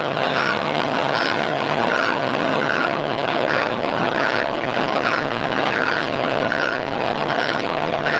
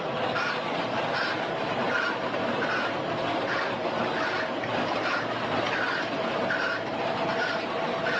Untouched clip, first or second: second